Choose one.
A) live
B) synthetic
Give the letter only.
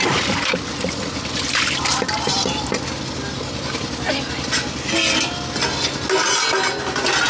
A